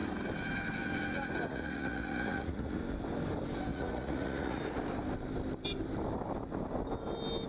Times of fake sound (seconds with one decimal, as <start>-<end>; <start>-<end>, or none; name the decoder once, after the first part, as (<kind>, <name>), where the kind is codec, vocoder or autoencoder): 1.5-2.8 (vocoder, Vocos); 3.7-4.6